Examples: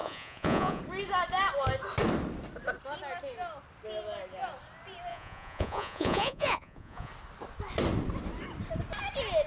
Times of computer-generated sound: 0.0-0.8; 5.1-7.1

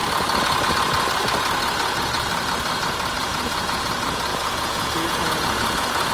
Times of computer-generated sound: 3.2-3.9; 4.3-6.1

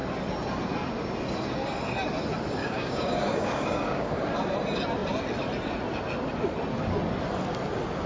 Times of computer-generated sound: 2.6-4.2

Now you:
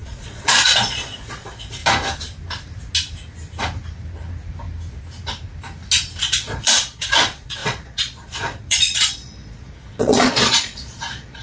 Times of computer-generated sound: 0.0-1.8; 6.2-11.4